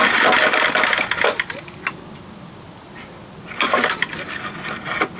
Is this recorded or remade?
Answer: recorded